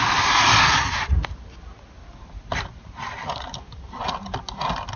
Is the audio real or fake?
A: real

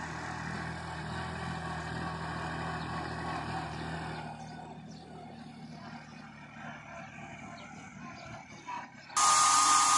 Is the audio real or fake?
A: real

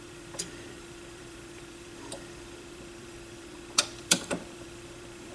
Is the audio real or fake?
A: fake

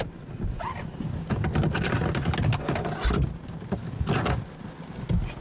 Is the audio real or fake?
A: real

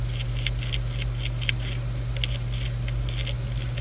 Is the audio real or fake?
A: real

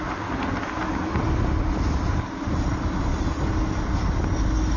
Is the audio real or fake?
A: real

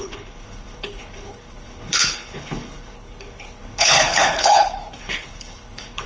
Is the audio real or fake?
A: fake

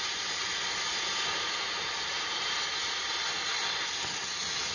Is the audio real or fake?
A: real